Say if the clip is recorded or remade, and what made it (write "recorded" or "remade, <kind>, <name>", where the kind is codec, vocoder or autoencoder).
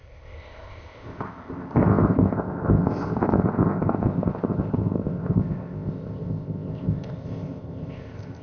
remade, codec, ZipCodec